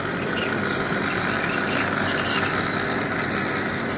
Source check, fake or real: real